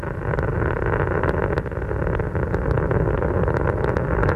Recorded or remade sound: recorded